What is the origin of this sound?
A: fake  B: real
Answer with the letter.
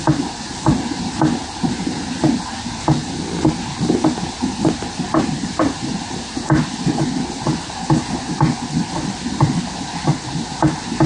B